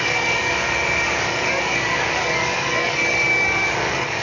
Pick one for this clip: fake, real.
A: fake